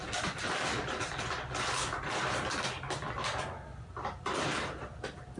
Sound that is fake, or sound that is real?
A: real